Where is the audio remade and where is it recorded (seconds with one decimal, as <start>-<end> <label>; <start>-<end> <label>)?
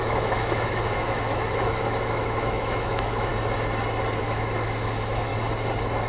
0.0-3.3 remade; 3.3-4.2 recorded; 4.2-5.3 remade; 5.3-6.1 recorded